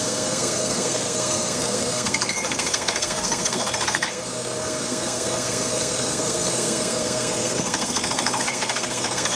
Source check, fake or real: fake